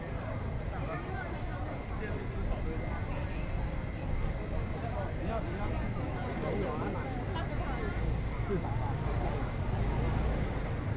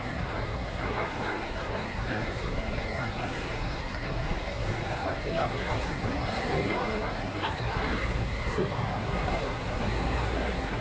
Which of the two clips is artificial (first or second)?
second